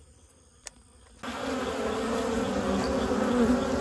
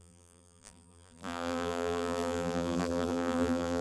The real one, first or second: first